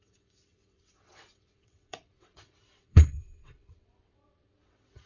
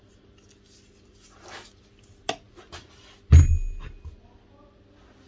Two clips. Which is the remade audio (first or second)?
first